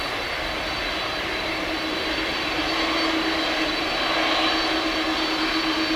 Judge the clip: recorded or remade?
recorded